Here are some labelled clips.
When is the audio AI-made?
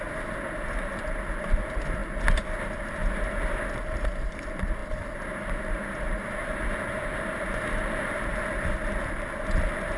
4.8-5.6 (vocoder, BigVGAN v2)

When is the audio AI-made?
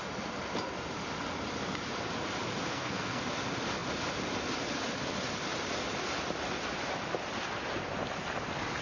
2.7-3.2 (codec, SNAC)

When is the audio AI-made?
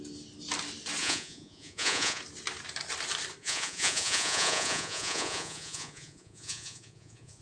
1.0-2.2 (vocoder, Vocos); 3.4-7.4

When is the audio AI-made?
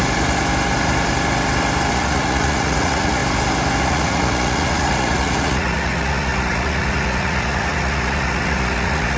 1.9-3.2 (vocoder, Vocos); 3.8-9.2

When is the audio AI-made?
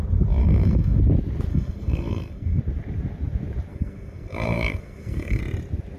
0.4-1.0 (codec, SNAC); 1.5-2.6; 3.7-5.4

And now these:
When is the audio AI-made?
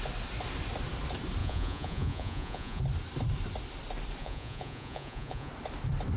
1.4-2.8 (vocoder, Vocos); 4.2-5.5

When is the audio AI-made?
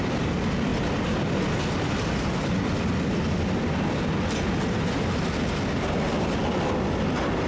none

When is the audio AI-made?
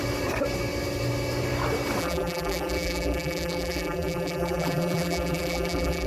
2.0-6.1 (vocoder, BigVGAN v2)